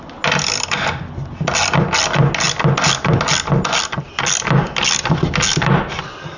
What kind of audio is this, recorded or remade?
recorded